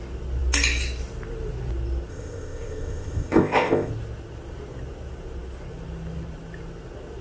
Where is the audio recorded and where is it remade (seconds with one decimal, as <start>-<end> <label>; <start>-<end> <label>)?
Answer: 0.0-2.1 recorded; 2.1-3.9 remade; 3.9-7.2 recorded